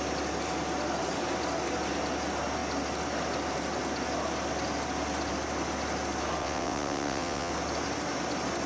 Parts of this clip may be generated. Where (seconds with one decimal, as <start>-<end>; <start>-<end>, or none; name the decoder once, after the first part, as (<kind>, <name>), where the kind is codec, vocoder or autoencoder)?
6.4-7.5 (vocoder, WaveNeXt)